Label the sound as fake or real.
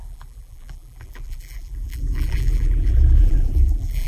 fake